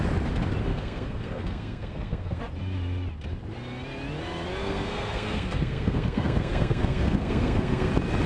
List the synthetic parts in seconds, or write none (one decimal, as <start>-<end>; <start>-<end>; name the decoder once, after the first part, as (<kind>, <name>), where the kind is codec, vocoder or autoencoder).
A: 0.7-2.4 (codec, SNAC); 4.6-7.9